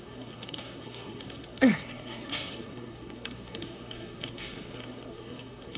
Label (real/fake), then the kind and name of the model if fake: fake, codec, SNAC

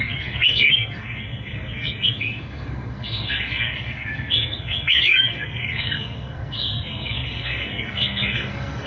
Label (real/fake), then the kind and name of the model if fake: fake, codec, SNAC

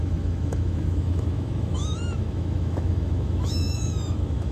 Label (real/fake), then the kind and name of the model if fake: fake, autoencoder, DAC-VAE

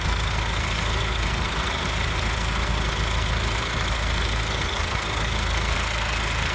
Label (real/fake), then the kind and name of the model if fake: fake, codec, SNAC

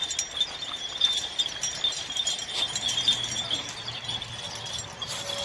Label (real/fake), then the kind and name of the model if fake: real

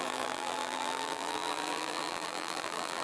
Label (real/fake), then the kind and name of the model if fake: fake, vocoder, BigVGAN v2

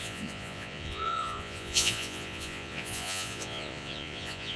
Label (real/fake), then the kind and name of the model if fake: fake, vocoder, Vocos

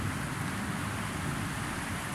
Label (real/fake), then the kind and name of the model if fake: fake, vocoder, BigVGAN v2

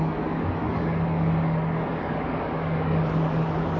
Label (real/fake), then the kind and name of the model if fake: fake, codec, DAC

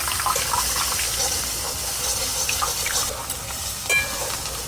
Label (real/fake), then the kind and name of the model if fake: real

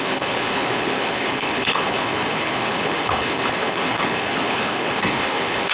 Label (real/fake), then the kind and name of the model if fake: fake, codec, HILCodec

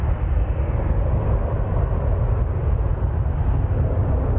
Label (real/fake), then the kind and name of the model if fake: real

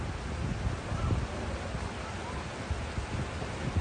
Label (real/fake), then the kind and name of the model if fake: real